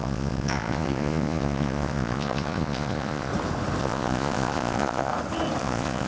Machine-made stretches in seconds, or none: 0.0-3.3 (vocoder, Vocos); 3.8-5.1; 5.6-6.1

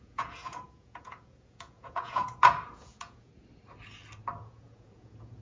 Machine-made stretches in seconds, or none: 0.0-3.3 (vocoder, Vocos); 4.4-5.4

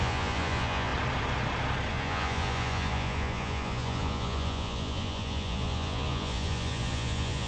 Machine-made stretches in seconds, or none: 0.0-0.9 (vocoder, Vocos); 1.9-7.5

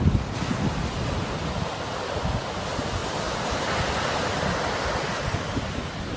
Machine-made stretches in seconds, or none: none

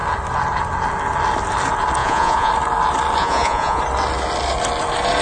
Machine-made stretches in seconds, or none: 2.0-2.5 (vocoder, Vocos); 3.2-3.8

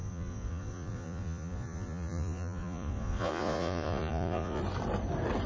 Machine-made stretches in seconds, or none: 0.0-4.6 (vocoder, Vocos)

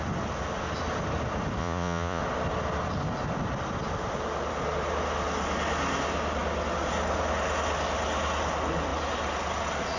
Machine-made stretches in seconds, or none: 1.6-2.2 (vocoder, Vocos)